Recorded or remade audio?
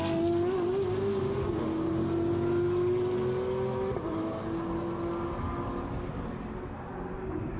recorded